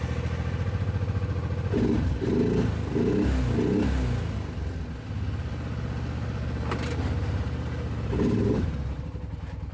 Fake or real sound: real